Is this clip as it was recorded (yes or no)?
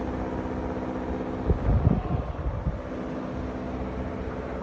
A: yes